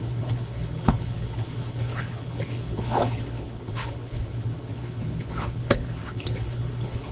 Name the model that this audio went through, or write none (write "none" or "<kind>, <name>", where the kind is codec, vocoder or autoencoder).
codec, HILCodec